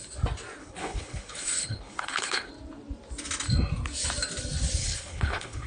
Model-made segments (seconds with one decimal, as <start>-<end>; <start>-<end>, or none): 0.6-2.5; 4.8-5.7